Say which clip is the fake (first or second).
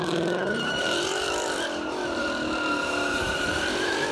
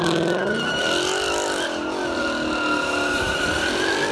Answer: first